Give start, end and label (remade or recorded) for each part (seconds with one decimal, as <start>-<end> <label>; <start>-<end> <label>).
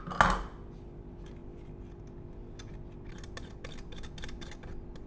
0.0-5.1 recorded